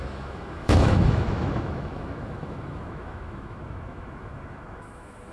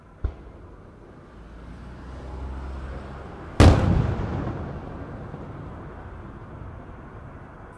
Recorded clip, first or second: second